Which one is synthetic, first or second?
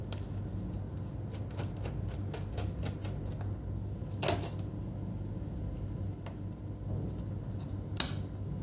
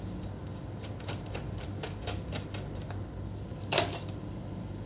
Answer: second